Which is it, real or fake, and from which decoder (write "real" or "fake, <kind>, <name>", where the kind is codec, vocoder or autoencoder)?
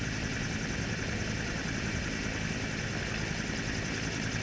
real